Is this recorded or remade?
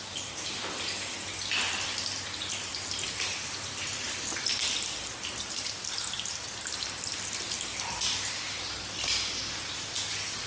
recorded